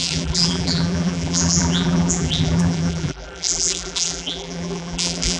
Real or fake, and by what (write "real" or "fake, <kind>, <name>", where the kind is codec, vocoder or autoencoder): fake, vocoder, BigVGAN v2